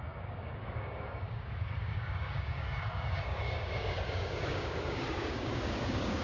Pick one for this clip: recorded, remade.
remade